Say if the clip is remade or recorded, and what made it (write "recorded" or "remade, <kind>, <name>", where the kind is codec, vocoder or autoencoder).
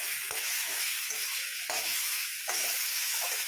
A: remade, autoencoder, DAC-VAE